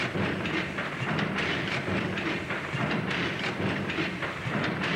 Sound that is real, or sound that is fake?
fake